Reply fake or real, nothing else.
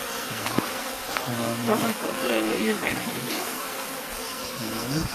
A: fake